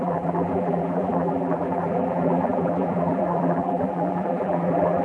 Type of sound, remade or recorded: remade